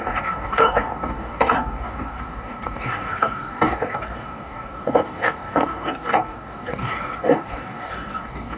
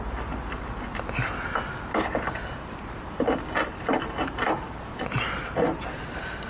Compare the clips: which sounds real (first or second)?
second